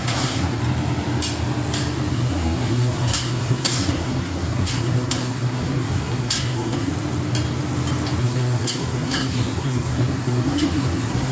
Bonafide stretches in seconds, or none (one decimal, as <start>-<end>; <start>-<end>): 0.6-2.1; 6.9-8.2